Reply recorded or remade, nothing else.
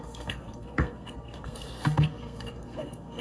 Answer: remade